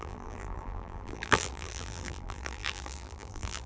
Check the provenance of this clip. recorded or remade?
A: remade